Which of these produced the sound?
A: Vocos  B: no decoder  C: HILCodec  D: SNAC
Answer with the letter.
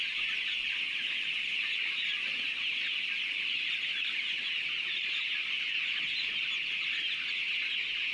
B